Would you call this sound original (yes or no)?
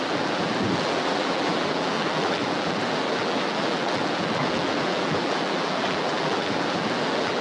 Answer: no